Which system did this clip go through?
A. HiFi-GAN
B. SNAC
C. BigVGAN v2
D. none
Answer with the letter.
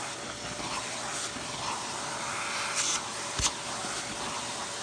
D